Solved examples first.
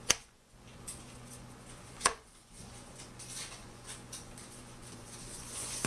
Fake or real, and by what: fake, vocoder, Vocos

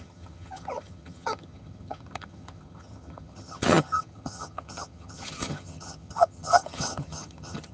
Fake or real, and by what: fake, vocoder, HiFi-GAN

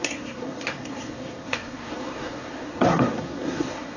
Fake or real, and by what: fake, codec, SNAC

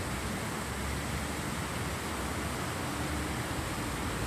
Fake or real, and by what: real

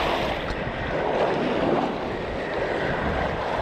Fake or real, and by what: real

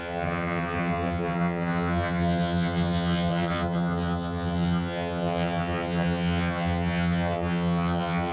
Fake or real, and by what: fake, vocoder, HiFi-GAN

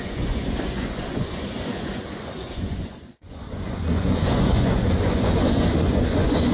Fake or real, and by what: fake, vocoder, Vocos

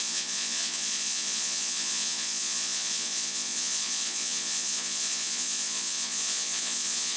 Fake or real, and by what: fake, vocoder, Vocos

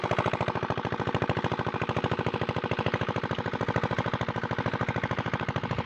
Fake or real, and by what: real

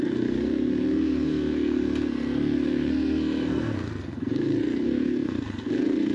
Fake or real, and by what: fake, codec, SNAC